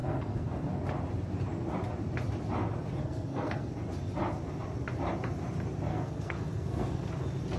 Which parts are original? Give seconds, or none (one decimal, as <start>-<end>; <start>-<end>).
0.7-3.0; 3.7-5.9; 7.1-7.6